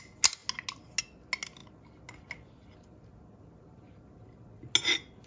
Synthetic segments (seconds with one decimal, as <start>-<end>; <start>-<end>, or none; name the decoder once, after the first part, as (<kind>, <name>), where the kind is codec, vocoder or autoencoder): none